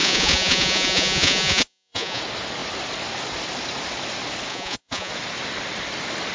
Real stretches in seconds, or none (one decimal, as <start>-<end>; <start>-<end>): 2.2-4.5; 5.1-6.3